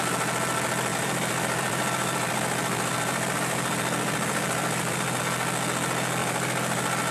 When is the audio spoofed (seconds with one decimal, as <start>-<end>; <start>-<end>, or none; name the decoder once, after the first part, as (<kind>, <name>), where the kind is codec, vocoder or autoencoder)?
0.9-5.2 (vocoder, BigVGAN v2); 6.2-7.1